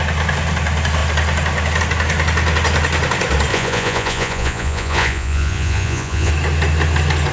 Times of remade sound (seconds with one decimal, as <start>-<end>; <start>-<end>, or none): 3.5-6.3